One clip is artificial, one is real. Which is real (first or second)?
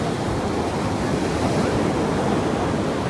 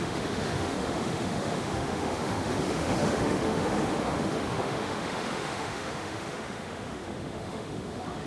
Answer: first